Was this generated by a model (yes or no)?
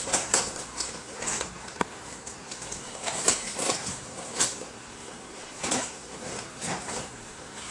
yes